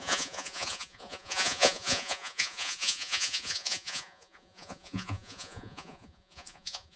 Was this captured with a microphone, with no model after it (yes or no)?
no